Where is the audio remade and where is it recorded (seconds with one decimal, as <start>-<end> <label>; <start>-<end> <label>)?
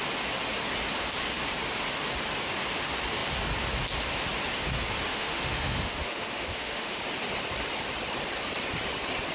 0.0-5.1 recorded; 5.1-7.0 remade; 7.0-9.3 recorded